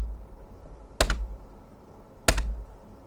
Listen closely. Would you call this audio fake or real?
real